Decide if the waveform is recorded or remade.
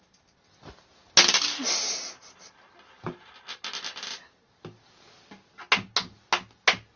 recorded